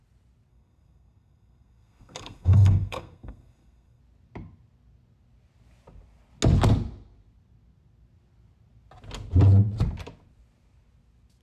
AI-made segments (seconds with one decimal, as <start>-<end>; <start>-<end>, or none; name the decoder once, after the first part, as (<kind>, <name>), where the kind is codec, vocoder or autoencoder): 0.5-4.0 (codec, SNAC)